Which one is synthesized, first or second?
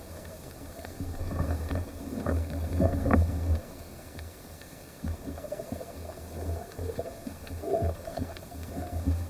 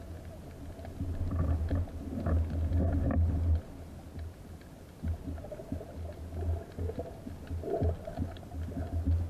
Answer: first